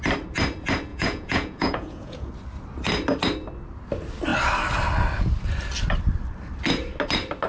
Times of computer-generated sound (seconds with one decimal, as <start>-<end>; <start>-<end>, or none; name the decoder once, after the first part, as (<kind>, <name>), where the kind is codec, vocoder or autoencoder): 0.9-2.3 (vocoder, Vocos)